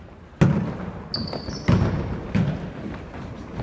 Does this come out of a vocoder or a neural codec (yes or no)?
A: no